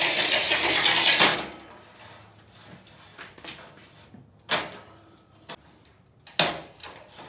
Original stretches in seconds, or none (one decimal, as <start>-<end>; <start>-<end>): 0.0-1.3; 2.0-3.1; 5.5-7.3